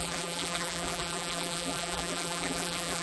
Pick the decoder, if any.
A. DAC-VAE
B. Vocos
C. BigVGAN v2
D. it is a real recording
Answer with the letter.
C